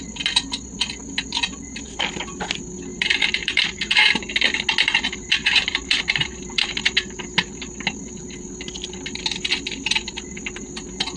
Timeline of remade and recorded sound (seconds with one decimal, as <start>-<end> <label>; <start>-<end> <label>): 0.0-2.9 recorded; 2.9-4.3 remade; 4.3-5.4 recorded; 5.4-7.2 remade; 7.2-11.2 recorded